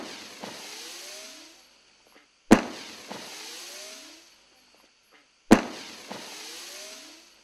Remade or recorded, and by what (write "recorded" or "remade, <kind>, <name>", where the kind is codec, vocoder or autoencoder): recorded